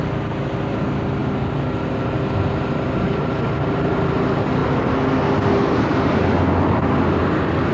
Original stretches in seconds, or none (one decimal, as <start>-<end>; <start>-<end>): 0.0-7.7